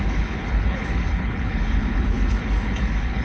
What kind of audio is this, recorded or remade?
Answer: remade